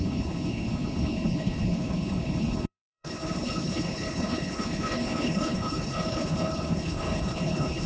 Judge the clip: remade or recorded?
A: remade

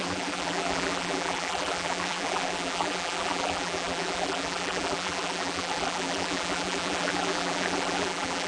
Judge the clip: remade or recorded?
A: remade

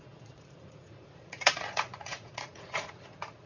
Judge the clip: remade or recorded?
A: remade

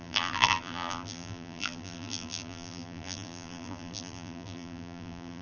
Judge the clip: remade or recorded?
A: remade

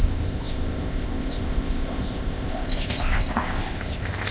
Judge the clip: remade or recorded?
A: remade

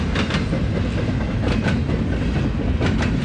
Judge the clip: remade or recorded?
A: recorded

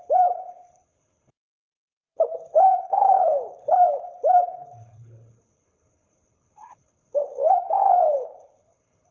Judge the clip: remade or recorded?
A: remade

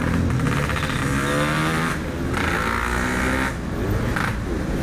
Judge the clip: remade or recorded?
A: recorded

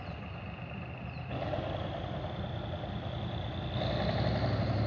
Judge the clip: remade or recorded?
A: recorded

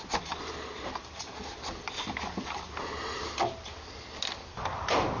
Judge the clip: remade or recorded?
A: recorded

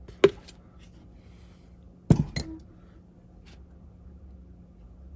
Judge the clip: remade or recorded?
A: recorded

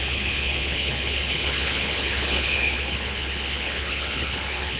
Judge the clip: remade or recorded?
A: remade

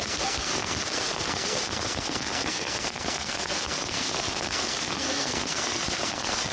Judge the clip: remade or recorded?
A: remade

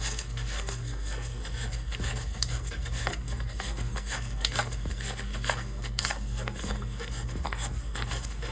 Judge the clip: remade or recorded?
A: remade